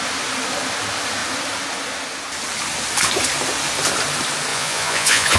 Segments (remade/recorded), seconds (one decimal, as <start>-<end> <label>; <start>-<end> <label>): 0.0-4.5 recorded; 4.5-5.4 remade